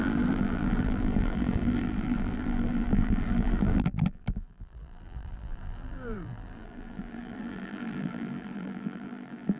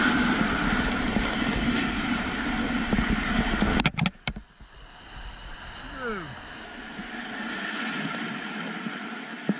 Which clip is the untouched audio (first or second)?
second